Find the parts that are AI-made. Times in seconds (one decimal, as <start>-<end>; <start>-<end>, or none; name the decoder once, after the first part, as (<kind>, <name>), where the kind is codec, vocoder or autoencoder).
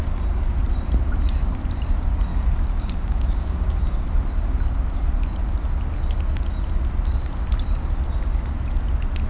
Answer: 2.3-3.8 (codec, DAC)